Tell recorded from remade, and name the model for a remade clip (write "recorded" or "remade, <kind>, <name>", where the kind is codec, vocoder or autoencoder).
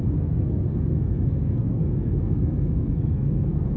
remade, codec, SNAC